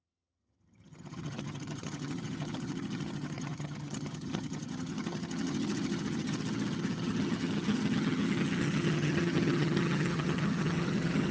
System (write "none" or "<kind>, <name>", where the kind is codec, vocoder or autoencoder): vocoder, HiFi-GAN